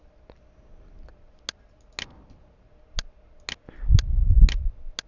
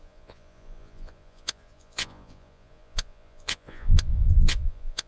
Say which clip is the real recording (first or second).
first